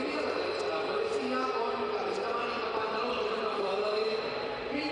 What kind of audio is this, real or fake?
fake